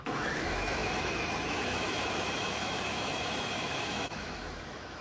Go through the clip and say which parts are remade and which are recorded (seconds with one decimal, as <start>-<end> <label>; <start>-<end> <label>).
0.0-5.0 remade